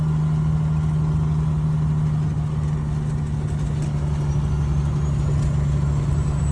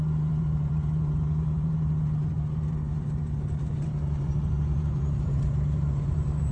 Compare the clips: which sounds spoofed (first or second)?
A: second